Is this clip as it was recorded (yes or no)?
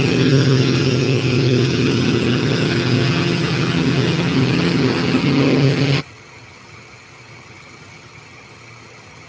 no